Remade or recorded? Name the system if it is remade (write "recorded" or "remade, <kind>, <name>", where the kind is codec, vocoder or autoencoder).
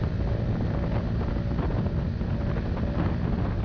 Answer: recorded